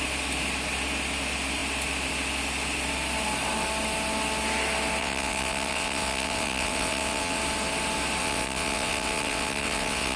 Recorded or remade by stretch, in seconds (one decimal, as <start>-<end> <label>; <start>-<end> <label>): 0.0-5.0 recorded; 5.0-7.4 remade; 7.4-8.2 recorded; 8.2-10.2 remade